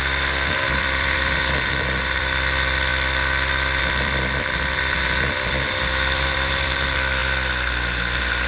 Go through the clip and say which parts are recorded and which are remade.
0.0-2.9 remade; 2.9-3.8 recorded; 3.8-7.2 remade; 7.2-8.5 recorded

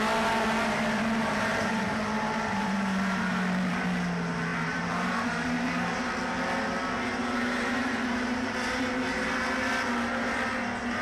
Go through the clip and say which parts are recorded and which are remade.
0.0-1.2 recorded; 1.2-3.7 remade; 3.7-4.5 recorded; 4.5-6.2 remade; 6.2-7.2 recorded; 7.2-8.8 remade; 8.8-11.0 recorded

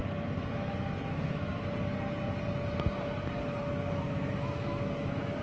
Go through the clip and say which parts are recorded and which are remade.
0.0-0.5 recorded; 0.5-1.5 remade; 1.5-3.6 recorded; 3.6-5.4 remade

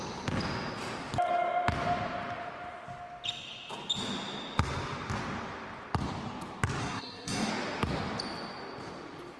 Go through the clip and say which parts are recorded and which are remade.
0.0-6.8 recorded; 6.8-7.5 remade; 7.5-9.4 recorded